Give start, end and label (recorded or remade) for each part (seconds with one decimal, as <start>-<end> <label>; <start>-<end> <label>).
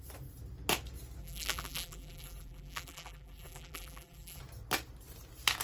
0.0-1.2 recorded; 1.2-4.4 remade; 4.4-5.6 recorded